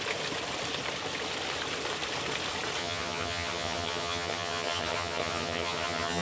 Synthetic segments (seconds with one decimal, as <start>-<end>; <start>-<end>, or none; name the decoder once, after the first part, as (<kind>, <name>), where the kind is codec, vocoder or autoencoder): 2.8-6.2 (vocoder, HiFi-GAN)